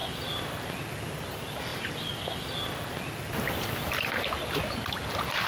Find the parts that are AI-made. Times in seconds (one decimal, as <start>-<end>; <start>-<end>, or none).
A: none